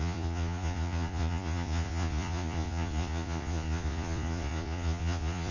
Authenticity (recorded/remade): remade